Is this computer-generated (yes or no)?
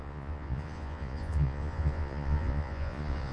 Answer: yes